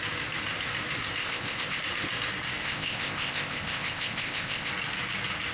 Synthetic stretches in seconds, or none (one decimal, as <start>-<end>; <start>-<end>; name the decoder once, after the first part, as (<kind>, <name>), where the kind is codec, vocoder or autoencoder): 1.2-1.8 (codec, ZipCodec); 2.6-4.7